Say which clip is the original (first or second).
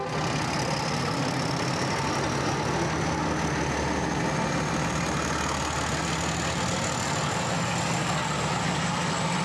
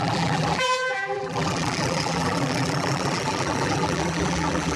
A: first